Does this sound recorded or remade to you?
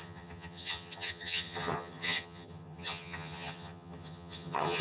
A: remade